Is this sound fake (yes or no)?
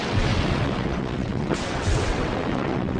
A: yes